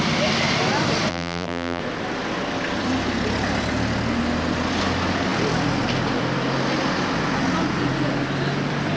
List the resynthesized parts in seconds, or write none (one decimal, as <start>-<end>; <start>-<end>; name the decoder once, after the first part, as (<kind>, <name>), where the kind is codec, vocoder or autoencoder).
1.1-1.8 (vocoder, BigVGAN v2)